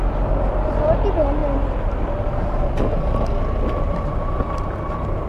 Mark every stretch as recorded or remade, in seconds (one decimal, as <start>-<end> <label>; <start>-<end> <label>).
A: 0.0-5.3 recorded